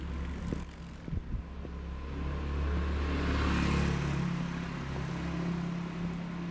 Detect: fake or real real